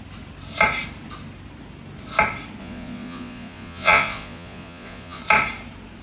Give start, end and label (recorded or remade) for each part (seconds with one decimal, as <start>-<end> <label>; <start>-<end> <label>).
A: 0.0-2.6 recorded; 2.6-5.2 remade; 5.2-6.0 recorded

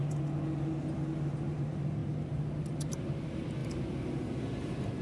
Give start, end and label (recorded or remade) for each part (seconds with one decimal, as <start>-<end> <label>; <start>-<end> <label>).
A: 0.0-5.0 recorded